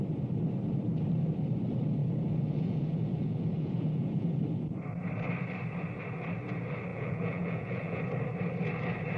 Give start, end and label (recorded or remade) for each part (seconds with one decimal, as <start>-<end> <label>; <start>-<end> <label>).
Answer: 0.0-2.0 recorded; 2.0-4.4 remade; 4.4-6.9 recorded; 6.9-8.0 remade; 8.0-9.2 recorded